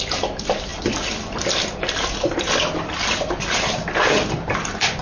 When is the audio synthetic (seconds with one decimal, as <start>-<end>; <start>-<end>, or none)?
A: none